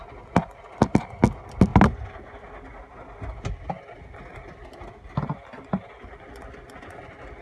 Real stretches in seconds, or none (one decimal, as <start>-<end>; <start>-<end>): 0.0-7.4

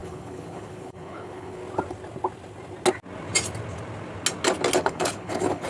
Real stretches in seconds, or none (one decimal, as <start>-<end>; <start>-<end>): 1.6-4.8